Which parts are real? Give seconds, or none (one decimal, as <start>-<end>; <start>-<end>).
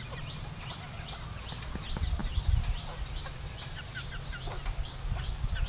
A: 0.0-5.7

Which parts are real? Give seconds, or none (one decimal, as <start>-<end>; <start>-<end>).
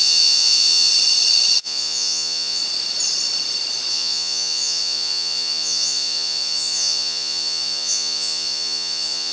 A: 0.9-1.6; 2.6-3.9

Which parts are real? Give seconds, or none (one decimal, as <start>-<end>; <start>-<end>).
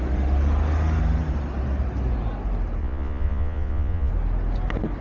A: 0.0-2.8; 4.1-5.0